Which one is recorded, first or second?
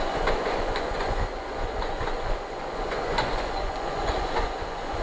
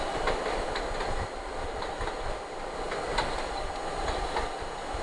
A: second